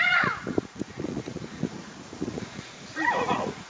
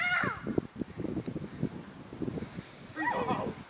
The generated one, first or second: first